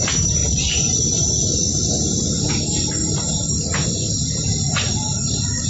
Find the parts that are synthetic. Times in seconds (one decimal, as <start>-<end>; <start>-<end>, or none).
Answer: 0.4-2.5; 3.0-5.7